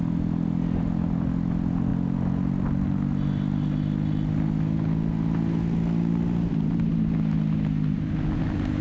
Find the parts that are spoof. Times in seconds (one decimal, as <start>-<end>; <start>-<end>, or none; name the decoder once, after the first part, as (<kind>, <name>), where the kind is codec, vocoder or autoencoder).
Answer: none